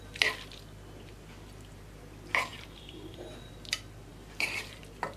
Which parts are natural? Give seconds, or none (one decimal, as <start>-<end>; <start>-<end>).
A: 0.0-2.5; 3.5-4.1; 4.8-5.2

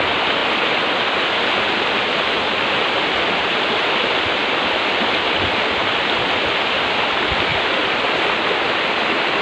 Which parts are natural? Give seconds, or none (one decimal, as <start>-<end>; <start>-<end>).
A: 0.0-5.8; 6.4-7.5; 8.2-9.4

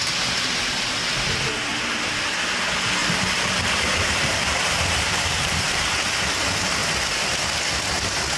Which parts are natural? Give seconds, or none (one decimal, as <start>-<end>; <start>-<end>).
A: 0.0-3.0; 5.7-8.4

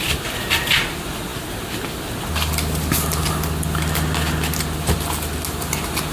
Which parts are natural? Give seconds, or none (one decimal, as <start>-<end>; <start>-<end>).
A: 0.0-6.1

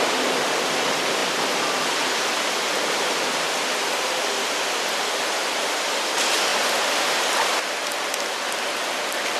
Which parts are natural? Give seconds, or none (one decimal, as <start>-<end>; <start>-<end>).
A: 0.0-9.4

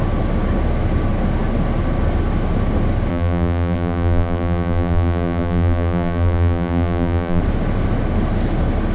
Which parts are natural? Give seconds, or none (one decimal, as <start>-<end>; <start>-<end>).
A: 0.0-3.1; 7.4-8.9